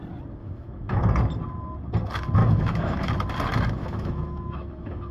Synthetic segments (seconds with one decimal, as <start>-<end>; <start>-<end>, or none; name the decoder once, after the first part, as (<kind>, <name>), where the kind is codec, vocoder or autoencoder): 0.4-1.0 (autoencoder, DAC-VAE); 2.4-3.1; 3.8-5.1